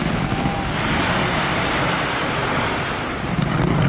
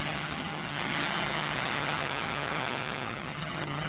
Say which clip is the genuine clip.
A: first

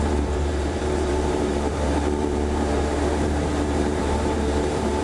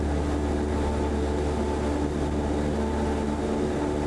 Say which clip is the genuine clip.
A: second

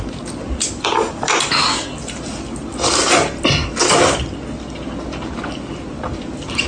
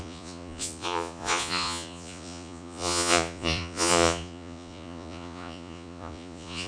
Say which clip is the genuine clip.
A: first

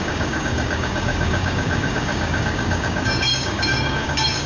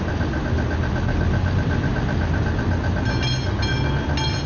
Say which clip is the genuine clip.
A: second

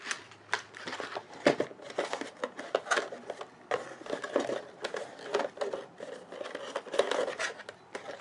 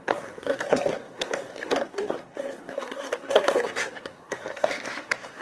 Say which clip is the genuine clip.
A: first